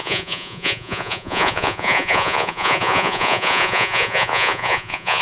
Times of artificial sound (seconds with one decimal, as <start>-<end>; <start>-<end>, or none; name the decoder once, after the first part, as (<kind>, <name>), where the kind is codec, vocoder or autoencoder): 0.0-5.2 (vocoder, Vocos)